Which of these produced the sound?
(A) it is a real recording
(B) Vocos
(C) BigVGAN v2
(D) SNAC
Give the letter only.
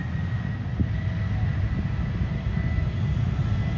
A